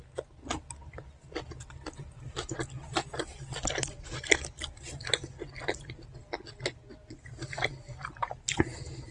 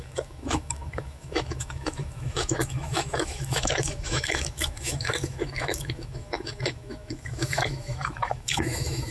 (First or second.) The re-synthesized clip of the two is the second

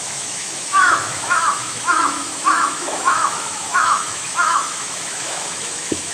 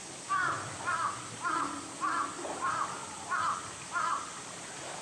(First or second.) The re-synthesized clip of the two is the first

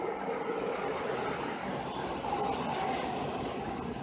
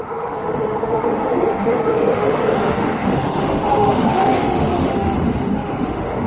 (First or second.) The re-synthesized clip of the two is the second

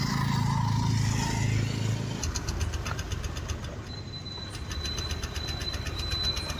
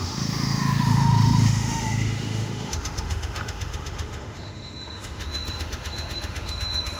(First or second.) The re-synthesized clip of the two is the second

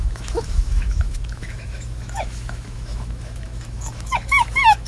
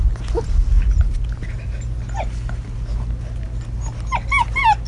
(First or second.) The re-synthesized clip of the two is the first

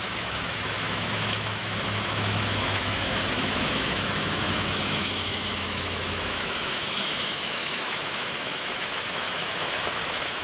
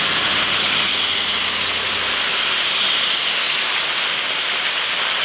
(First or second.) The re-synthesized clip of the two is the first